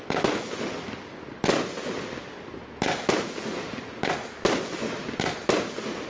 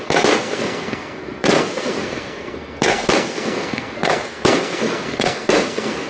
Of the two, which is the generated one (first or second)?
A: second